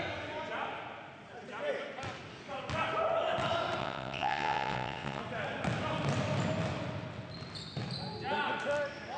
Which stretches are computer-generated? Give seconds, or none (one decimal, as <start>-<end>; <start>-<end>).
3.8-5.2